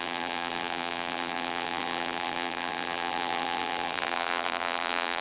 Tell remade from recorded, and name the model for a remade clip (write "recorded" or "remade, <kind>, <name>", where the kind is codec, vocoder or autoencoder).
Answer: remade, vocoder, BigVGAN v2